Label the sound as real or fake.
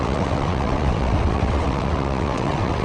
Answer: fake